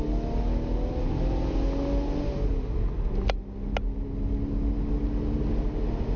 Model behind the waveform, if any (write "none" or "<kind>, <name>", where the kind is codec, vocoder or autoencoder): none